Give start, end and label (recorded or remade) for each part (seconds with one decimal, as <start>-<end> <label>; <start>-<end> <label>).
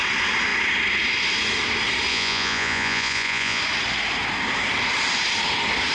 0.0-2.1 recorded; 2.1-3.6 remade; 3.6-5.9 recorded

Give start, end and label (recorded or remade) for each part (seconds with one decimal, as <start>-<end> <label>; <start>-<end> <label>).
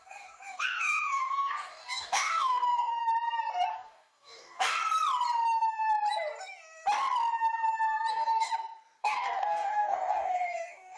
0.0-3.0 remade; 3.0-3.7 recorded; 3.7-4.8 remade; 4.8-8.1 recorded; 8.1-8.5 remade; 8.5-9.0 recorded; 9.0-11.0 remade